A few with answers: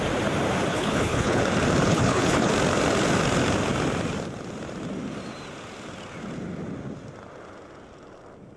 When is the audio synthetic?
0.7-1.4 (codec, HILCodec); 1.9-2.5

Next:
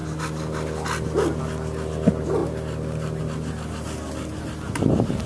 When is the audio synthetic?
none

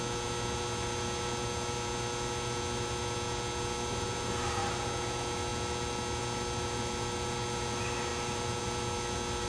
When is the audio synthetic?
none

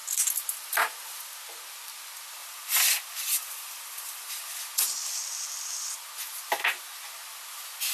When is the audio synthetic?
2.4-5.2 (vocoder, BigVGAN v2)

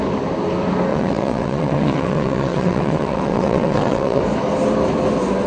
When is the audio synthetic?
0.9-4.2 (vocoder, WaveNeXt)

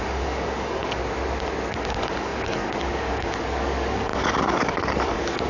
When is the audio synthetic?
0.0-1.0 (codec, DAC); 1.7-5.5

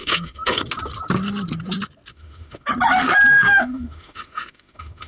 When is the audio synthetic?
0.0-0.6 (autoencoder, DAC-VAE); 2.1-2.7; 3.3-5.1